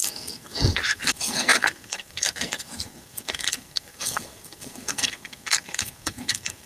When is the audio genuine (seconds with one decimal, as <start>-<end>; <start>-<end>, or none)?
none